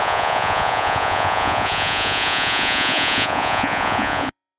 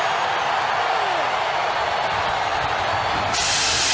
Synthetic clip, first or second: first